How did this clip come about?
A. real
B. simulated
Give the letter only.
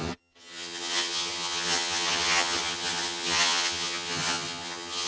B